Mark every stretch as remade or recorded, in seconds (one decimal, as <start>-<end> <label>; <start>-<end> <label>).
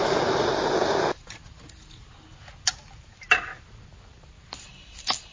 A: 0.0-5.3 recorded